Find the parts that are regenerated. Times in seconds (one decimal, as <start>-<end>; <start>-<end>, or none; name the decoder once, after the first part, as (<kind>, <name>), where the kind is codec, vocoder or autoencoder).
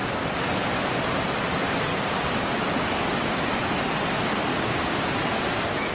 1.9-3.1 (codec, DAC); 4.5-5.1